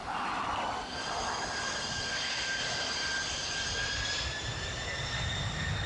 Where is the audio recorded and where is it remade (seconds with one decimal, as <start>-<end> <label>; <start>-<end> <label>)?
0.0-5.9 recorded